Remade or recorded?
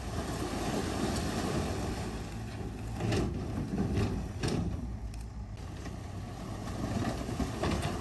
recorded